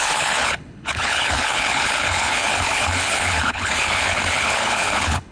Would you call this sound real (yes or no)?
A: no